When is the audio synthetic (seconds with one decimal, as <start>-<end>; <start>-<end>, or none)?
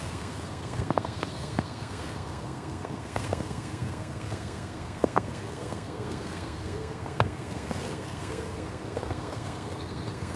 0.0-10.4